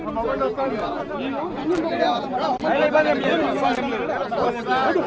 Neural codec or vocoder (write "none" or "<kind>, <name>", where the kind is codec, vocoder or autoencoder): none